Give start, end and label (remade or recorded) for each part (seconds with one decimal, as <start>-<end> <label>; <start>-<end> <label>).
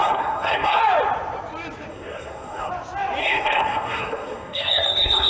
0.0-0.8 remade; 0.8-1.9 recorded; 1.9-2.7 remade; 2.7-3.2 recorded; 3.2-5.3 remade